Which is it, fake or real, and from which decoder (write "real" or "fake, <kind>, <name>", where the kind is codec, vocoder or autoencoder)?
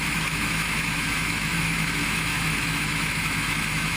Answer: fake, autoencoder, DAC-VAE